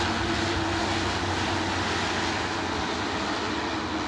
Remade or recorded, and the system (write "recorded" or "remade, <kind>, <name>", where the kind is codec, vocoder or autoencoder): recorded